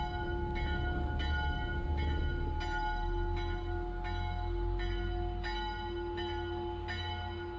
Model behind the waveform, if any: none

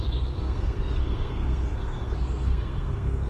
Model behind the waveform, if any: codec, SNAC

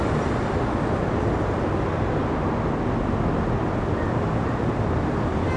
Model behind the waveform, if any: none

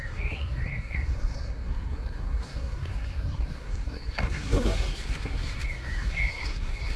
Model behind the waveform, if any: codec, SNAC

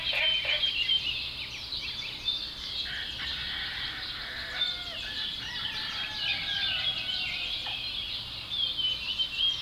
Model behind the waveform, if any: none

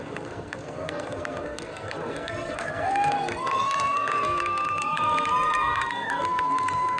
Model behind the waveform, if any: codec, SNAC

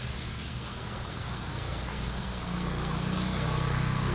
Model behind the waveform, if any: codec, SNAC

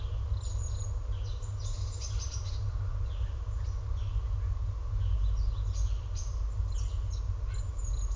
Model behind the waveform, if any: none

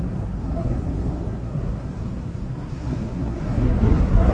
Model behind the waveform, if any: codec, SNAC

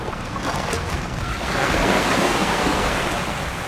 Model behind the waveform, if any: codec, SNAC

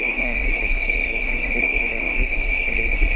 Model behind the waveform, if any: codec, SNAC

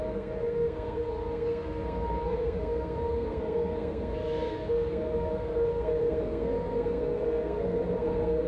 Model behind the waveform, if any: codec, SNAC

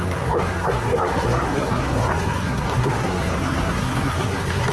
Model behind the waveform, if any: codec, SNAC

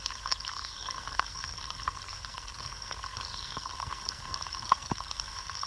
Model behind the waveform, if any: codec, SNAC